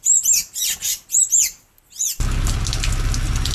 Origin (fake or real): real